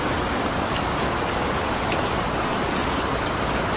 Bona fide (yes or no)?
yes